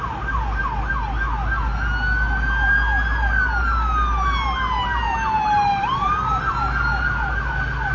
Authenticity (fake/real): real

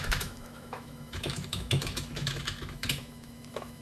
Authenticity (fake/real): fake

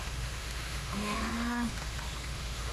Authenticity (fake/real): fake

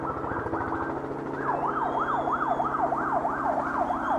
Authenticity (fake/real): real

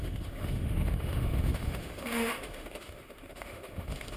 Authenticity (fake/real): fake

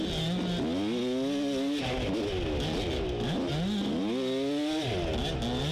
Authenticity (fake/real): real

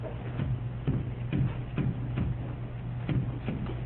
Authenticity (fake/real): real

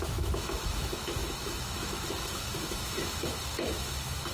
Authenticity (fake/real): fake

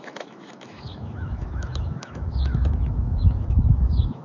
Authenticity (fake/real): fake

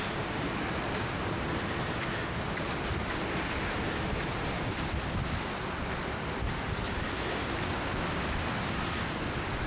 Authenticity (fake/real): real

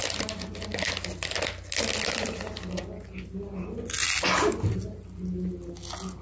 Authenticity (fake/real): real